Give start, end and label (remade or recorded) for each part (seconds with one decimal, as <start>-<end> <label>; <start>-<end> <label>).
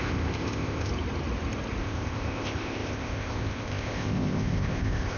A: 0.0-0.9 remade; 0.9-1.8 recorded; 1.8-5.2 remade